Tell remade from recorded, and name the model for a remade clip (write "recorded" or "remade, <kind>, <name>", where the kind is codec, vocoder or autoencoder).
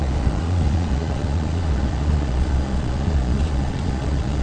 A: remade, vocoder, Vocos